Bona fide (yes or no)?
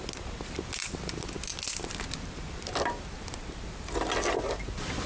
yes